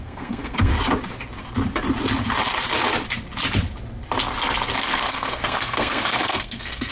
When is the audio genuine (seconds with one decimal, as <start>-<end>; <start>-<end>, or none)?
0.7-4.8